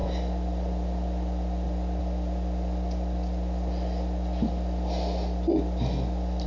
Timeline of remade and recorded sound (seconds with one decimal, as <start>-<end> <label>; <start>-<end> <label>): 0.0-6.5 recorded